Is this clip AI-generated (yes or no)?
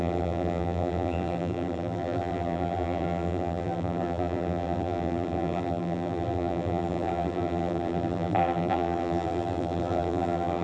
yes